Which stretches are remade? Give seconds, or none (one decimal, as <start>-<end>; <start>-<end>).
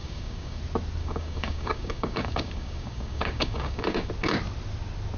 0.0-0.6; 1.0-4.1